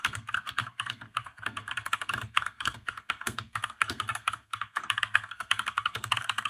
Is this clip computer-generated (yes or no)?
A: yes